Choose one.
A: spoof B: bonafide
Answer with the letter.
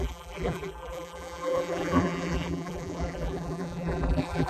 A